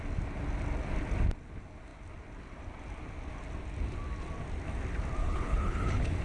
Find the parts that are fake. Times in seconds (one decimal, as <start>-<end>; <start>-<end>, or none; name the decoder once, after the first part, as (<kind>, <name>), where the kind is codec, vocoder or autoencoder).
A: 5.2-6.2 (codec, HILCodec)